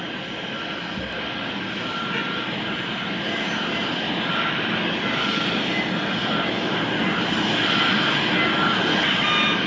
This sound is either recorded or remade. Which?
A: recorded